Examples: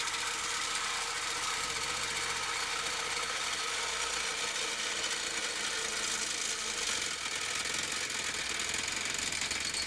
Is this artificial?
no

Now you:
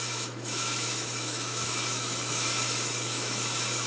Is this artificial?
yes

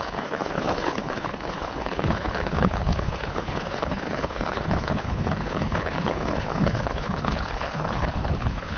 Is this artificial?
yes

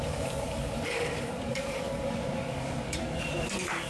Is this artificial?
yes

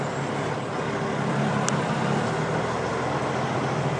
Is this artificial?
no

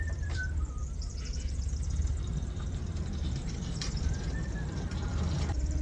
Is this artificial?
yes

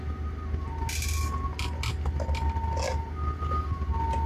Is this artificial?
no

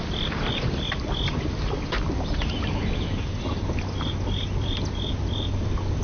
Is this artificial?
no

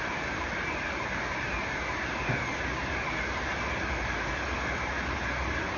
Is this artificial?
no